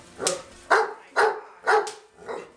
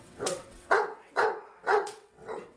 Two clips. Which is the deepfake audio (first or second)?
second